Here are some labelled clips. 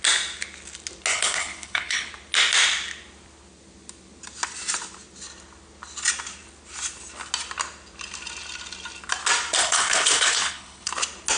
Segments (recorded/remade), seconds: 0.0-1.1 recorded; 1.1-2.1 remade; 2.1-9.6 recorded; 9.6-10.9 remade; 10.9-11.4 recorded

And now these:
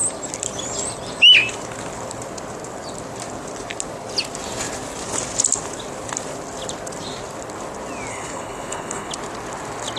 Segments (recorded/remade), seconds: 0.0-8.1 recorded; 8.1-9.1 remade; 9.1-10.0 recorded

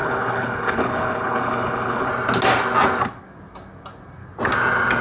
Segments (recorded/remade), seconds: 0.0-2.1 remade; 2.1-5.0 recorded

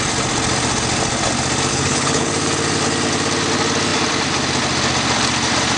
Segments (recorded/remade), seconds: 0.0-1.7 recorded; 1.7-2.3 remade; 2.3-5.8 recorded

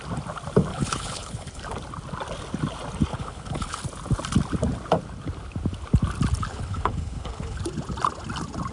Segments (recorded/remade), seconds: 0.0-0.7 recorded; 0.7-1.6 remade; 1.6-3.1 recorded; 3.1-3.8 remade; 3.8-6.5 recorded; 6.5-7.6 remade; 7.6-8.7 recorded